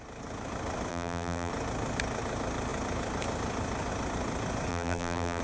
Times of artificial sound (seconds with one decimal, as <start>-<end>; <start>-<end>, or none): 0.9-1.5; 4.7-5.4